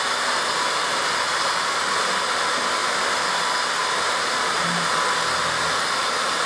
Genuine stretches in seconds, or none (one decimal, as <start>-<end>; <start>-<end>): 0.0-2.8; 3.4-3.8; 4.9-6.5